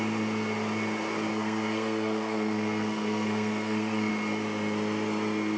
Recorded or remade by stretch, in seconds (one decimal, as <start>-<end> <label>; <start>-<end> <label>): 0.0-1.3 recorded; 1.3-4.1 remade; 4.1-5.6 recorded